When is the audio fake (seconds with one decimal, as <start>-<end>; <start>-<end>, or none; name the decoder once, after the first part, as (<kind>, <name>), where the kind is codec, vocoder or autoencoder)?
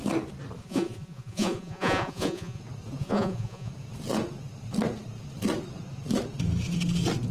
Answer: 0.6-2.6 (vocoder, Vocos); 3.0-3.7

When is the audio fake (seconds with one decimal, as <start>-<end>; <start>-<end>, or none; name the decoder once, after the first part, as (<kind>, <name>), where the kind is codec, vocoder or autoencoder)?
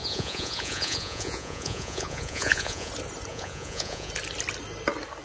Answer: 0.0-2.9 (vocoder, Vocos); 3.3-4.1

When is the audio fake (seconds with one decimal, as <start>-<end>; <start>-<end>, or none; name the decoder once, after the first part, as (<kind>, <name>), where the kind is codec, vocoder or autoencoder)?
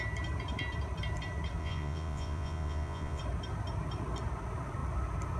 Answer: 1.6-3.2 (vocoder, Vocos)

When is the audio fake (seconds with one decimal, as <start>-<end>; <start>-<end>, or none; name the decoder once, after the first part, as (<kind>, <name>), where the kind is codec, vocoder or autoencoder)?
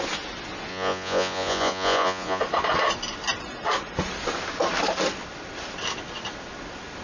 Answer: 0.7-2.4 (vocoder, Vocos)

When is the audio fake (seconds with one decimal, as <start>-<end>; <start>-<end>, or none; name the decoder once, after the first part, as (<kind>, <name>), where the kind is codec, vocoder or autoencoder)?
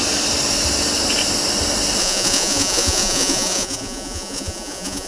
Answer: 2.0-5.1 (vocoder, Vocos)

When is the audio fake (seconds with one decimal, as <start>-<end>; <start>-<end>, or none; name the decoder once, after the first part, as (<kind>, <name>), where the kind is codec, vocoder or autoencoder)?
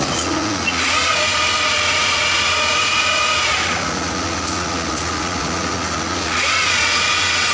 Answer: 0.0-7.5 (vocoder, Vocos)